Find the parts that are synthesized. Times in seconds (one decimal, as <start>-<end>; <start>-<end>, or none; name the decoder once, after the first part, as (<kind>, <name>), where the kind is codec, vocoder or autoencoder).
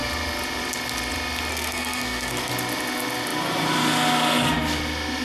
1.5-2.5 (codec, SNAC)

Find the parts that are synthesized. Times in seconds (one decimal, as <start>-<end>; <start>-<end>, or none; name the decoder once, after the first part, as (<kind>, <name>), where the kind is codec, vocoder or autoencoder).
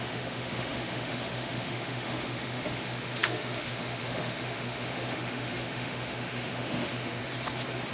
0.0-7.2 (autoencoder, DAC-VAE)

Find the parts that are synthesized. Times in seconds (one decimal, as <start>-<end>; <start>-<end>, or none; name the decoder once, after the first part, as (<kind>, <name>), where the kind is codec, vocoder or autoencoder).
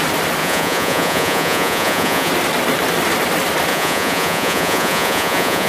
0.4-2.3 (vocoder, Vocos); 3.7-5.7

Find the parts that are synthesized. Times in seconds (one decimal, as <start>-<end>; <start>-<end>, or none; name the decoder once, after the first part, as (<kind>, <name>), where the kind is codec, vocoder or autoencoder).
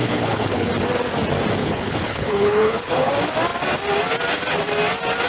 0.0-0.7 (codec, HILCodec); 1.6-3.1